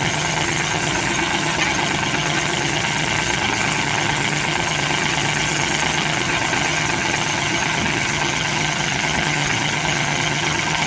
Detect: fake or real fake